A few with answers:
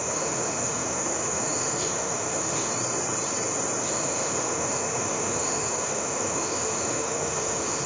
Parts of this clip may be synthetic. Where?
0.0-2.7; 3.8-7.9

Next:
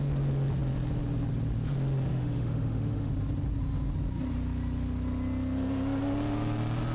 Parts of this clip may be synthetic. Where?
2.1-3.1

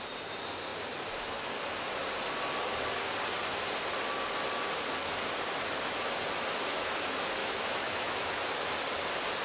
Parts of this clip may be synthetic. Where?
7.4-8.4

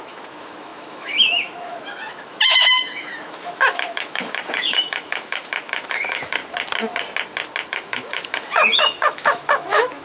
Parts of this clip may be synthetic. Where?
0.0-6.4; 7.7-10.0